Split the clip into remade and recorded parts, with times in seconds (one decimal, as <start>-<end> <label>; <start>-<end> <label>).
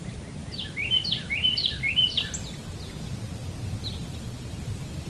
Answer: 0.0-0.4 recorded; 0.4-2.8 remade; 2.8-4.0 recorded; 4.0-5.1 remade